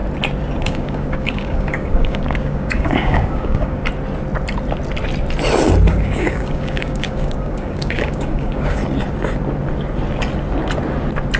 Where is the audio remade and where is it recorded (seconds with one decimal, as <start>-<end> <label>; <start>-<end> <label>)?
0.0-0.6 recorded; 0.6-3.8 remade; 3.8-5.9 recorded; 5.9-8.8 remade; 8.8-11.4 recorded